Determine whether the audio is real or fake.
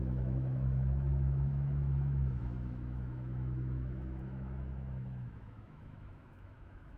fake